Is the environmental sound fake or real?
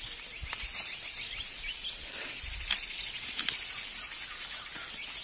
real